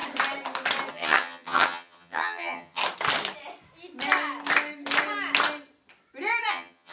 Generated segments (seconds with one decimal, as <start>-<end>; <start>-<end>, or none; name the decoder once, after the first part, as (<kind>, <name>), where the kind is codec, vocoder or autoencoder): 0.9-2.8 (vocoder, HiFi-GAN); 6.5-6.9